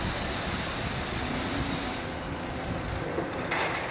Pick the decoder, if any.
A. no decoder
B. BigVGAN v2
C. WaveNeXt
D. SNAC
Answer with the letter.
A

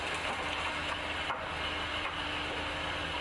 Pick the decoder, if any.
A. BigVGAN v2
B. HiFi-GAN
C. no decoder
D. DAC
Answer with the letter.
C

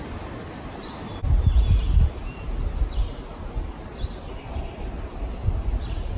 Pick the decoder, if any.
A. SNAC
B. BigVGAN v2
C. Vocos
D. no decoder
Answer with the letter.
D